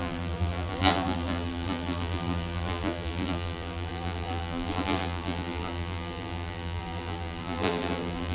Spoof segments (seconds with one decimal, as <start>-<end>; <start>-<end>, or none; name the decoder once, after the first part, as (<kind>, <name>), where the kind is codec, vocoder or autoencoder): 0.0-8.3 (vocoder, BigVGAN v2)